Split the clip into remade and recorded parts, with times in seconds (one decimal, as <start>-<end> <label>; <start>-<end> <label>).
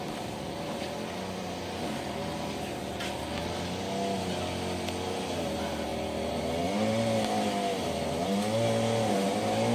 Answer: 0.0-9.7 recorded